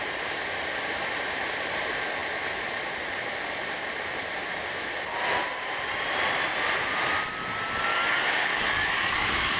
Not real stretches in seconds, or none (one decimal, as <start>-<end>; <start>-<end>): 7.9-9.6